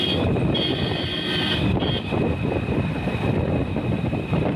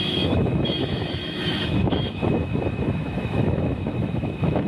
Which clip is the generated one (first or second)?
second